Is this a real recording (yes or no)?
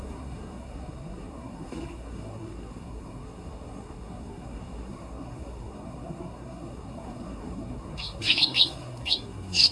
no